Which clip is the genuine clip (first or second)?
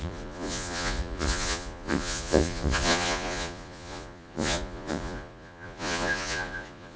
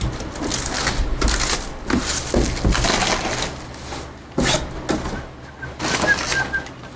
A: second